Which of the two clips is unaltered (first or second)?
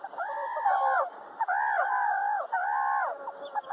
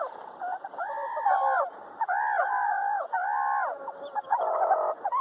first